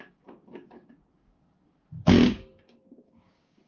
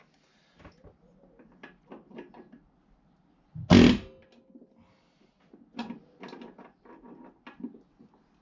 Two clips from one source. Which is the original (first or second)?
second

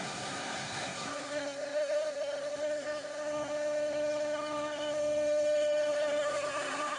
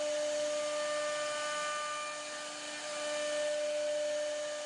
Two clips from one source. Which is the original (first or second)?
second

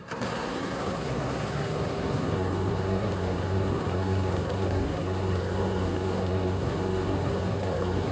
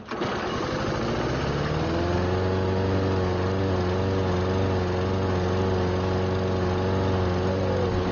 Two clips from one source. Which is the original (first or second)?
second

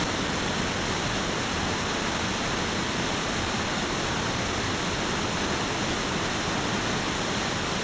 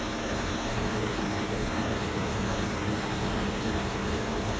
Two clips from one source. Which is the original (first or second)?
first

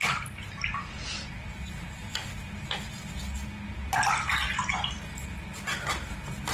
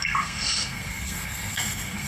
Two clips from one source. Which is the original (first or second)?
first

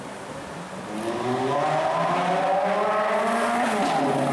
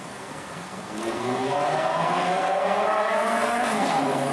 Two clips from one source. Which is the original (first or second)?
first